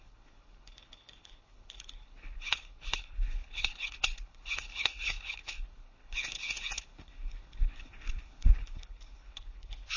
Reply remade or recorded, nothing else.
remade